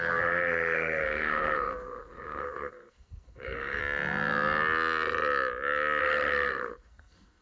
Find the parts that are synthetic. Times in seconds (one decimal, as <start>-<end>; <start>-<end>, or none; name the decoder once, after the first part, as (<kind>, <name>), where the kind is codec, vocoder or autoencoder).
0.0-3.8 (codec, SNAC); 6.0-7.4